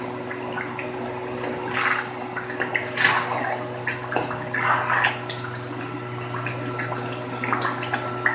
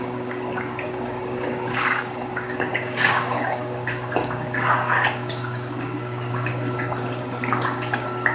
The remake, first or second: second